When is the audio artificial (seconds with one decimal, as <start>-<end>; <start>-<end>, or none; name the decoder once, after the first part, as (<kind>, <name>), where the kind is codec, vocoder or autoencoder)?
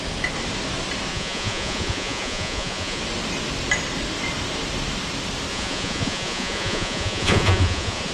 1.1-3.0 (vocoder, Vocos); 5.5-8.1